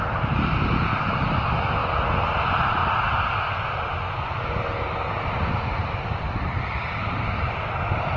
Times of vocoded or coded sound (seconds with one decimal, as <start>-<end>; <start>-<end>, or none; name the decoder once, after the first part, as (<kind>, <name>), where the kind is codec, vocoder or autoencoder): 0.9-1.4 (vocoder, BigVGAN v2); 5.8-7.5